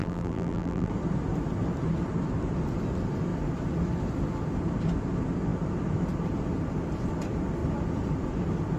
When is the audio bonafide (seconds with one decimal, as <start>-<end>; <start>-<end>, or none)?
0.9-8.8